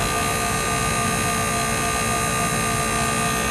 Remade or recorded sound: recorded